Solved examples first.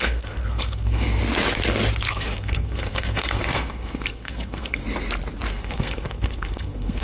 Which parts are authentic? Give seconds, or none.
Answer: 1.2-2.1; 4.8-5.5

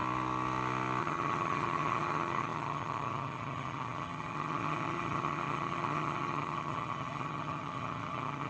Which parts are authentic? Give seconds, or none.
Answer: 0.0-1.0

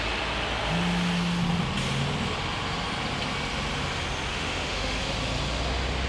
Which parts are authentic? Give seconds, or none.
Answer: 0.0-4.3; 5.0-6.1

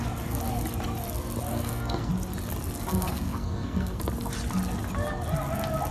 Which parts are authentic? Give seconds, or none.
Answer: 0.0-1.5; 2.1-2.9; 4.0-5.9